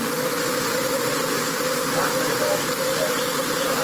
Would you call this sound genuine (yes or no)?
yes